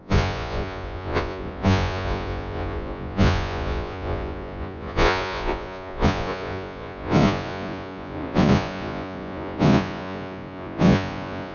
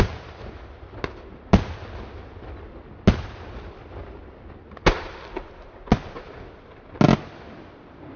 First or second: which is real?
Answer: second